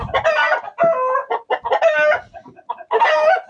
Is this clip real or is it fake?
real